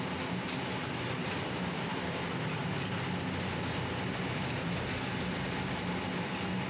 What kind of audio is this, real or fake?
real